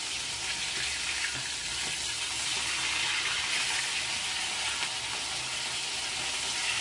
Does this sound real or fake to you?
real